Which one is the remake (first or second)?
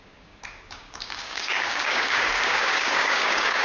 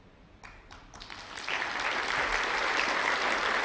first